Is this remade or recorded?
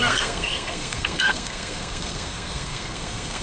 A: remade